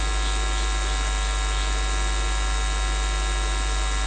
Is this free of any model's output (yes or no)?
yes